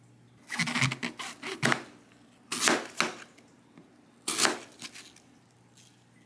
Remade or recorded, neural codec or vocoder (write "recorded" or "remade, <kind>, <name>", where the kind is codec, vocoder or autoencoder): recorded